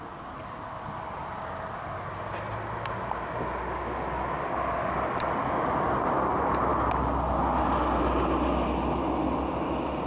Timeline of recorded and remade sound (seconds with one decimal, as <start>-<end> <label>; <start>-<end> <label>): 0.0-10.1 recorded